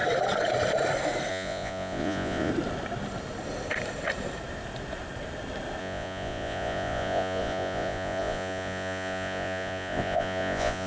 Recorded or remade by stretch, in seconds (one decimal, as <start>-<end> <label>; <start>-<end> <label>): 0.0-1.3 recorded; 1.3-2.5 remade; 2.5-5.8 recorded; 5.8-10.9 remade